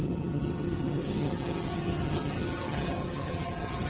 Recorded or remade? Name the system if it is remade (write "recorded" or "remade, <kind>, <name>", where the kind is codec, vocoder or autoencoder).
remade, vocoder, HiFi-GAN